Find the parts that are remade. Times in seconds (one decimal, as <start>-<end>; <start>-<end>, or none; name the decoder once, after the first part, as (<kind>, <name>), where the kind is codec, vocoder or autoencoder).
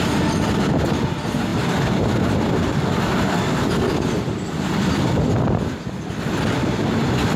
1.5-2.7 (vocoder, BigVGAN v2)